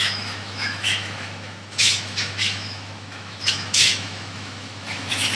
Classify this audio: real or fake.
fake